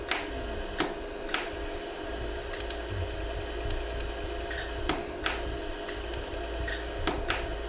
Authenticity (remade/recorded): recorded